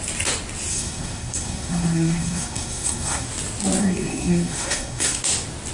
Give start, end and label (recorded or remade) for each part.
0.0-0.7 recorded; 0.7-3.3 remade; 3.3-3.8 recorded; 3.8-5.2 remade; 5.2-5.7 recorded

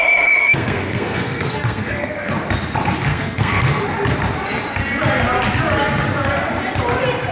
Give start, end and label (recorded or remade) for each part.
0.0-0.4 recorded; 0.4-2.3 remade; 2.3-3.1 recorded; 3.1-3.8 remade; 3.8-7.3 recorded

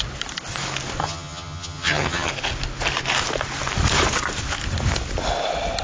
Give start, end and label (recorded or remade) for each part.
0.0-1.0 recorded; 1.0-2.3 remade; 2.3-5.8 recorded